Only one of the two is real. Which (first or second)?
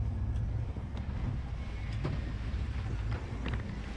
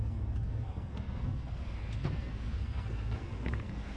first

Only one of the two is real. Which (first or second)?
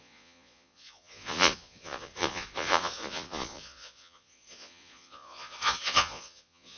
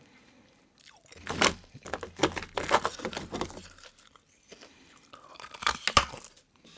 second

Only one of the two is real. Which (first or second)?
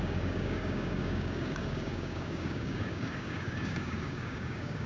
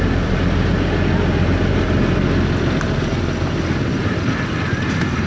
second